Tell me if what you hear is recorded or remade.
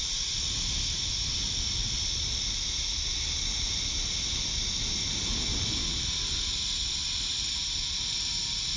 recorded